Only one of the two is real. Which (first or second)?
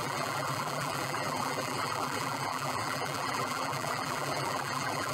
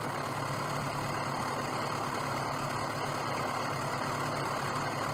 second